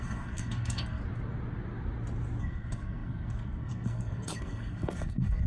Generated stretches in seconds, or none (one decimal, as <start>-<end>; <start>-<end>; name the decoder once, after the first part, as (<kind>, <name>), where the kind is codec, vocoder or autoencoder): 0.0-1.0 (codec, SNAC); 2.4-5.5